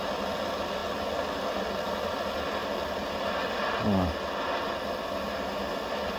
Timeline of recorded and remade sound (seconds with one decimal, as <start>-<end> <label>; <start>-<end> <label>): 0.0-6.2 recorded